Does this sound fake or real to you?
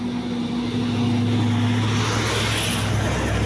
real